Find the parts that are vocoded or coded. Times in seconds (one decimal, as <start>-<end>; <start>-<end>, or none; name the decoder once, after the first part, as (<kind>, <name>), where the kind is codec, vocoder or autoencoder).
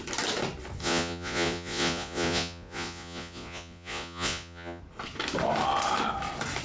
0.8-4.8 (vocoder, Vocos)